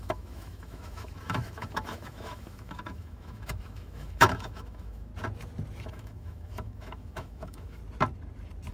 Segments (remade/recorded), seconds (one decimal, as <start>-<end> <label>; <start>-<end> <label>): 0.0-5.1 remade; 5.1-5.9 recorded; 5.9-7.8 remade; 7.8-8.7 recorded